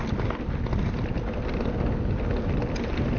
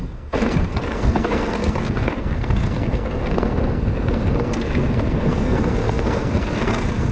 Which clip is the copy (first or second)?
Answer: second